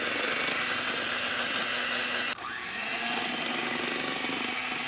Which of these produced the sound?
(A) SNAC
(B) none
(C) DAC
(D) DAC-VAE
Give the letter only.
B